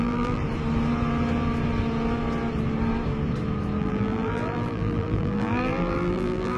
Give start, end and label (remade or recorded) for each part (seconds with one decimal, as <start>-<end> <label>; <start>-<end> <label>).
0.0-0.4 remade; 0.4-3.8 recorded; 3.8-6.6 remade